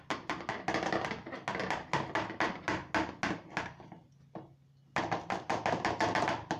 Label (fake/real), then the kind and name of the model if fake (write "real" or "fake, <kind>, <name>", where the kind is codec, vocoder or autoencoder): real